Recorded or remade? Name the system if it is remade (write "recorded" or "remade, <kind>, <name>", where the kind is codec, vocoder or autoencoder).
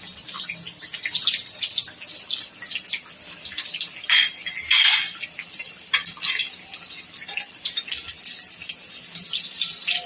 recorded